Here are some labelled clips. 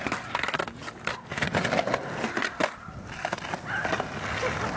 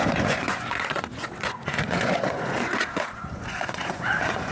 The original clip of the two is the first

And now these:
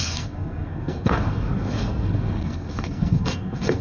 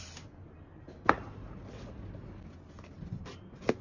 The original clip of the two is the second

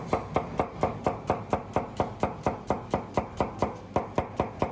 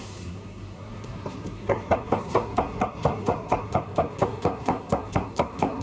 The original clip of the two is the first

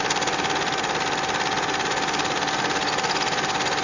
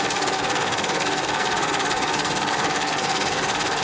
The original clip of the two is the first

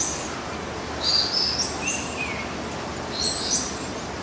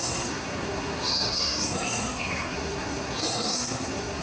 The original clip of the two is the first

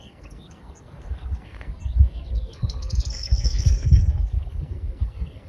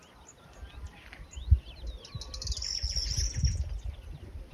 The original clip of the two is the second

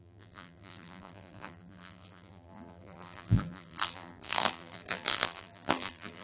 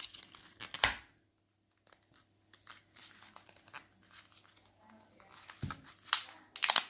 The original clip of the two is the second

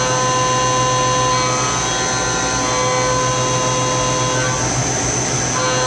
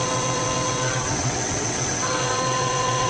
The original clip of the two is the first